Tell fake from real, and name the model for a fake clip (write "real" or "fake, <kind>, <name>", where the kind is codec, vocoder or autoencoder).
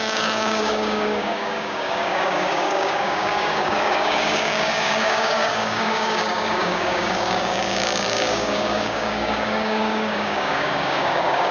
fake, codec, DAC